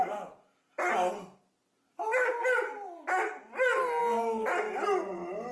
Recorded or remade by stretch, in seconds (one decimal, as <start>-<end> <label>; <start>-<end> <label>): 0.0-5.5 recorded